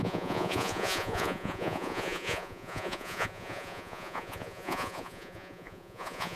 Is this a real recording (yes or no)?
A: no